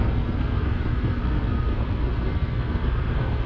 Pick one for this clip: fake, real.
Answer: fake